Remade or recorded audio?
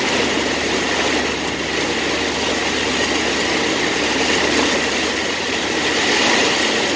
recorded